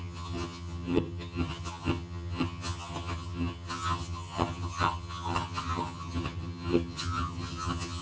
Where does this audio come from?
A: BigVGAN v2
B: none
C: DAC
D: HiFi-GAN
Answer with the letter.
D